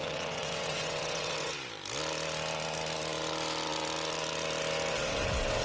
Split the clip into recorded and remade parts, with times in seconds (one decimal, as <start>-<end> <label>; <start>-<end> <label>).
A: 0.0-1.5 remade; 1.5-4.9 recorded; 4.9-5.6 remade

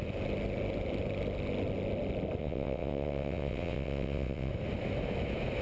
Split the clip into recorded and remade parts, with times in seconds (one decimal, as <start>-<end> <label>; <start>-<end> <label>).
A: 0.0-2.4 recorded; 2.4-4.5 remade; 4.5-5.6 recorded